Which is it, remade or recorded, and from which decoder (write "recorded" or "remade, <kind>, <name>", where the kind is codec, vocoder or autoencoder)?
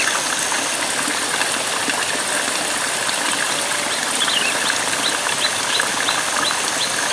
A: recorded